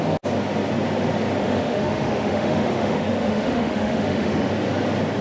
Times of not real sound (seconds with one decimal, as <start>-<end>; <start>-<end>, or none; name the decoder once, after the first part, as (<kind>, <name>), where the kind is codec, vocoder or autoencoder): 1.4-4.5 (autoencoder, DAC-VAE)